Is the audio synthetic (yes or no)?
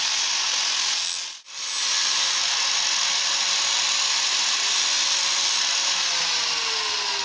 no